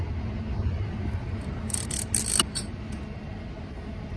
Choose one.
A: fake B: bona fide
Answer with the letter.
B